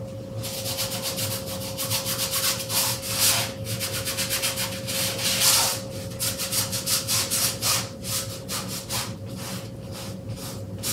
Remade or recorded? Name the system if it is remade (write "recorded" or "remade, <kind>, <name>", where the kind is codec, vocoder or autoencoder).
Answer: recorded